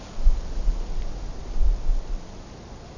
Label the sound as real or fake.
real